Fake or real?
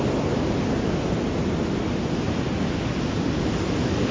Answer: real